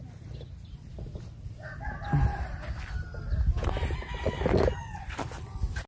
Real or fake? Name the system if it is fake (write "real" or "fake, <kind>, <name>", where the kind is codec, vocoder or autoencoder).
real